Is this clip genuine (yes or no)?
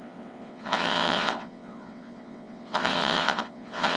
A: no